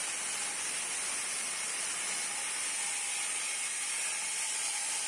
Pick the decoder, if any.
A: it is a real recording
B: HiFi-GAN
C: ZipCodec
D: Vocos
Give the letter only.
A